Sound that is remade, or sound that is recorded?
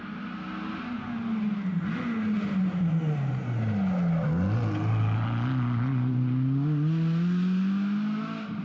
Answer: recorded